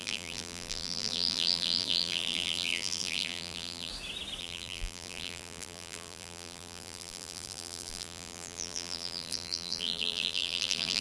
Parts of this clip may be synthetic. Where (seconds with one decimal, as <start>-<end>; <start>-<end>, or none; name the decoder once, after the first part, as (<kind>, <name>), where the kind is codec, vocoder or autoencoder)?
0.0-3.9 (vocoder, BigVGAN v2); 4.4-11.0